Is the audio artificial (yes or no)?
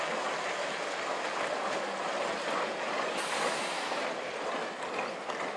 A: no